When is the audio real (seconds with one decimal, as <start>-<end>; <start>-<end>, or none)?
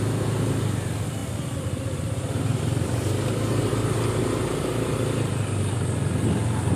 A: 0.0-6.8